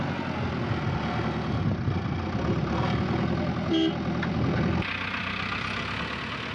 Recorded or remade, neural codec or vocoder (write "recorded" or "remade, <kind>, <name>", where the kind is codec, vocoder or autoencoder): recorded